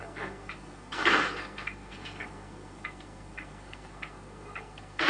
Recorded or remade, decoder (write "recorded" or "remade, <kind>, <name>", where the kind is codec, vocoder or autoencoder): remade, codec, SNAC